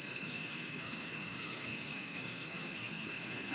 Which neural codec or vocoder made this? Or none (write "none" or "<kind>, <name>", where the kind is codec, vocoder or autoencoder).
codec, SNAC